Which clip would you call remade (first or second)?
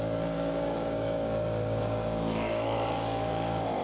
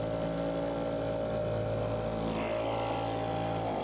first